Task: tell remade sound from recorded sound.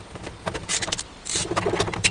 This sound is recorded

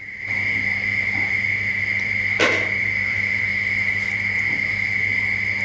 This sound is recorded